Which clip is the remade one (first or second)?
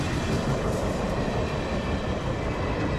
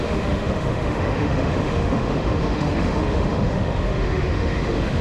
second